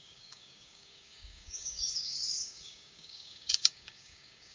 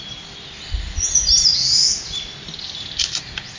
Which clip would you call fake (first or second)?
first